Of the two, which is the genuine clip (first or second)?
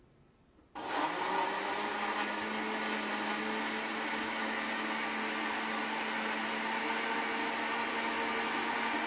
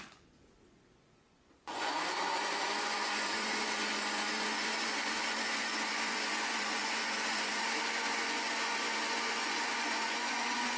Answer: first